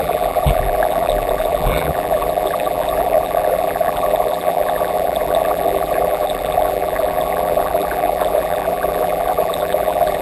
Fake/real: fake